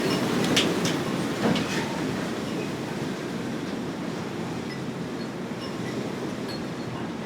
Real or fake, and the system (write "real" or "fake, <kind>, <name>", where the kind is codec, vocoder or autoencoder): fake, vocoder, BigVGAN v2